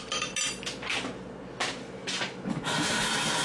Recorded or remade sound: recorded